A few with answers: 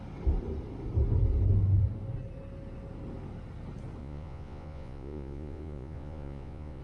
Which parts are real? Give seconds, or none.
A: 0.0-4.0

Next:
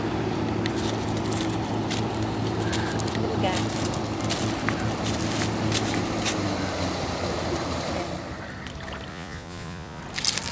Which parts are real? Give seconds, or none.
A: 0.0-9.1; 10.0-10.5

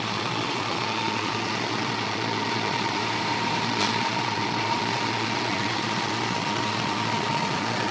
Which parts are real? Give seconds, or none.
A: 3.0-3.6

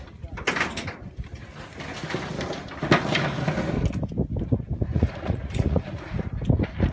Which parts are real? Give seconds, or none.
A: 0.0-4.9; 6.2-6.9